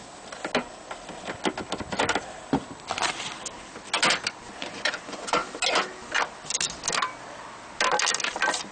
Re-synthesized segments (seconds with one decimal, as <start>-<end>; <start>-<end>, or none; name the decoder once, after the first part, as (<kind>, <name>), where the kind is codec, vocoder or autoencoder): 4.6-5.4 (vocoder, Vocos)